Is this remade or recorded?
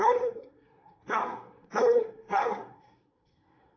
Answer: remade